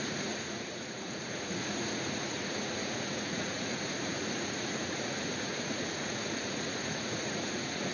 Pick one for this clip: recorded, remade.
remade